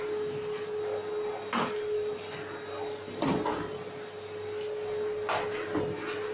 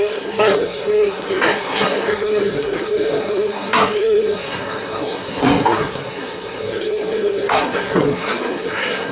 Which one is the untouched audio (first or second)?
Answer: first